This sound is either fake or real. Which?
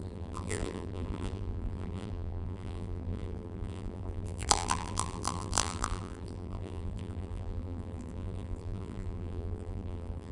fake